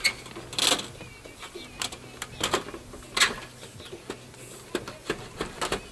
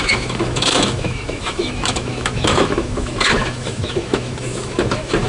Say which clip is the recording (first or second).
first